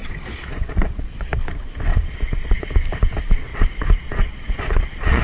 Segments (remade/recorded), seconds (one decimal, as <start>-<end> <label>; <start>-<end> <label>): 0.0-1.3 remade; 1.3-1.9 recorded; 1.9-2.7 remade; 2.7-3.5 recorded; 3.5-5.2 remade